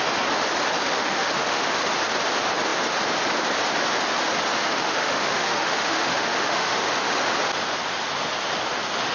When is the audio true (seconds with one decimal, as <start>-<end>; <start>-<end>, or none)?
0.0-0.8; 1.9-4.7; 7.2-9.1